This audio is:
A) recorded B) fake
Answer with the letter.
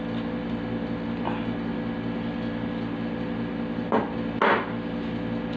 A